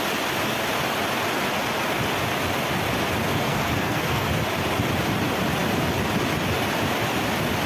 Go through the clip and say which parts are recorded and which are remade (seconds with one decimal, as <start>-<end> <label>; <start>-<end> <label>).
0.0-3.3 recorded; 3.3-4.3 remade; 4.3-7.7 recorded

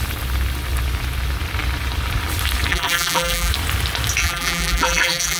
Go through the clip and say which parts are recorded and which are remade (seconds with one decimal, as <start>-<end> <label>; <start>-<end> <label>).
0.0-2.7 recorded; 2.7-3.5 remade; 3.5-4.2 recorded; 4.2-5.4 remade

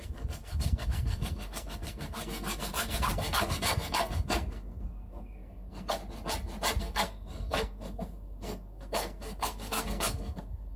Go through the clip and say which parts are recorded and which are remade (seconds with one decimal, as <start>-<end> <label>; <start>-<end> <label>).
0.0-6.0 remade; 6.0-6.8 recorded; 6.8-10.8 remade

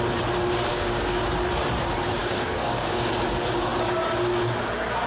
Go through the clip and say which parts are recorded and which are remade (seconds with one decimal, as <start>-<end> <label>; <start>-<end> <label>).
0.0-0.7 recorded; 0.7-1.2 remade; 1.2-2.2 recorded; 2.2-3.1 remade; 3.1-5.1 recorded

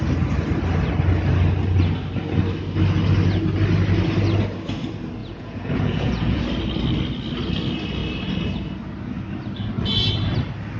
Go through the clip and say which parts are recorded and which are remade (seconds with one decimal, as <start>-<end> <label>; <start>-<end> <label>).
0.0-5.2 recorded; 5.2-6.4 remade; 6.4-10.8 recorded

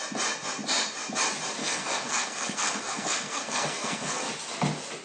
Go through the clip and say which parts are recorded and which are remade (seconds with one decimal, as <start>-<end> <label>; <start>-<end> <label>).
0.0-1.6 recorded; 1.6-4.2 remade; 4.2-5.0 recorded

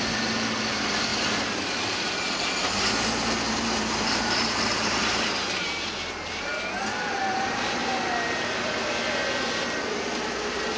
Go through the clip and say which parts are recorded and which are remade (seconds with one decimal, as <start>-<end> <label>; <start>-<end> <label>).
0.0-6.5 remade; 6.5-7.2 recorded; 7.2-7.8 remade; 7.8-9.9 recorded; 9.9-10.8 remade